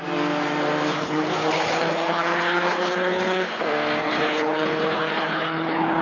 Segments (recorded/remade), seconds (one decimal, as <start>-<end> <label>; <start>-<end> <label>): 0.0-0.9 recorded; 0.9-3.6 remade; 3.6-4.0 recorded; 4.0-6.0 remade